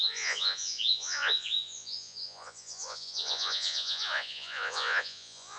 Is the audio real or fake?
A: fake